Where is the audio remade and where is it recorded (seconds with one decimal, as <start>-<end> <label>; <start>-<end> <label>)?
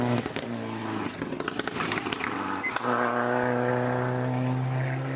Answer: 0.0-5.2 recorded